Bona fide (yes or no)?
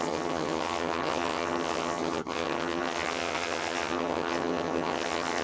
no